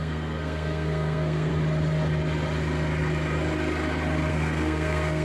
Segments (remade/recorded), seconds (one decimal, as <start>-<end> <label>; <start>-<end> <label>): 0.0-1.5 remade; 1.5-4.3 recorded; 4.3-5.2 remade